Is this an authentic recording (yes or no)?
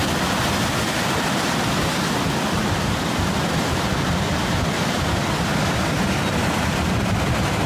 yes